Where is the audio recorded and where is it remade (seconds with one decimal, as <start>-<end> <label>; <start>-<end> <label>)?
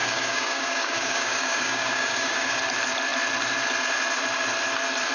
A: 0.0-2.6 remade; 2.6-5.1 recorded